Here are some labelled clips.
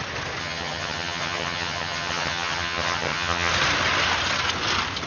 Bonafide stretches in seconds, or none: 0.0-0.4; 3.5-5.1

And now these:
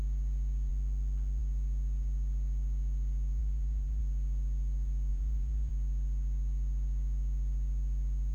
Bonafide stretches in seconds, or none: 0.0-3.4; 4.0-5.1; 5.7-8.3

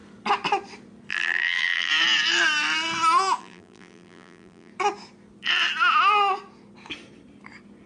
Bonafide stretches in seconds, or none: 0.0-1.1; 1.9-3.4; 4.7-7.9

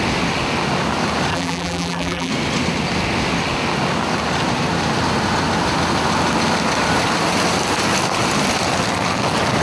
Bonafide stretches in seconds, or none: 0.0-1.3; 2.3-9.6

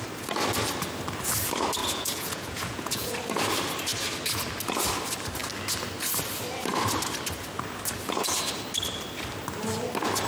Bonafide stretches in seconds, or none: 0.0-1.8; 3.1-10.3

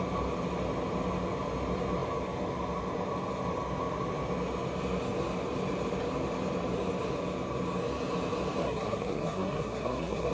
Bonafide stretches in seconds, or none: 0.0-8.6

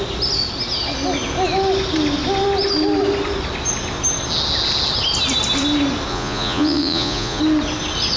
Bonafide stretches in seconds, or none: 0.0-6.1; 7.4-8.2